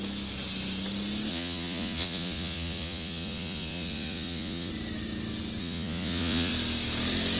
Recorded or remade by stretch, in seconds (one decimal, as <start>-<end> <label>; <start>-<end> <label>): 0.0-1.3 recorded; 1.3-4.7 remade; 4.7-5.6 recorded; 5.6-6.5 remade; 6.5-7.4 recorded